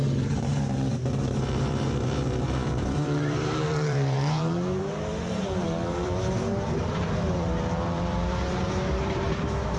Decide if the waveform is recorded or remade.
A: remade